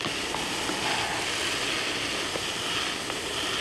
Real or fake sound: real